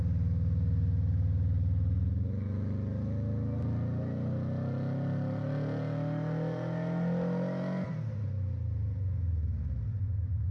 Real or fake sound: real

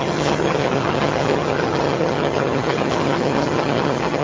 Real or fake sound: fake